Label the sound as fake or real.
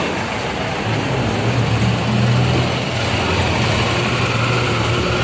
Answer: real